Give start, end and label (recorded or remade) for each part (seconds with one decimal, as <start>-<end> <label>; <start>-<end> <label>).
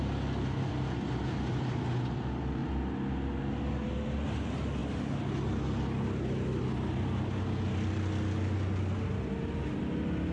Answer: 0.0-10.3 recorded